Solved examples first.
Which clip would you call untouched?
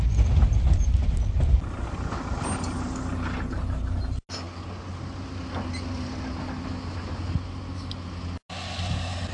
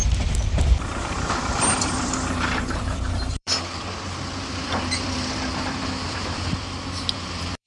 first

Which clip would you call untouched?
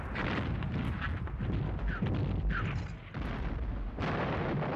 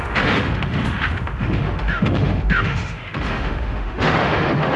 first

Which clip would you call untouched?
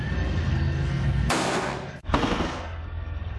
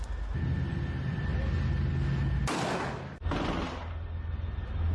second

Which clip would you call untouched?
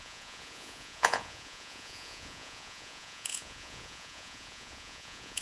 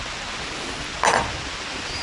second